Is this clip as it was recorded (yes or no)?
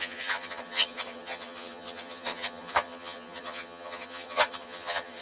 no